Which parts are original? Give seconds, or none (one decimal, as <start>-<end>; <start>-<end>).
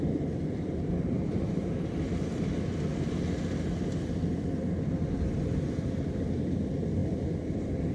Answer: 2.9-4.6